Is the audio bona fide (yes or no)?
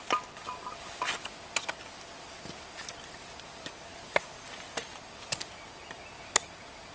yes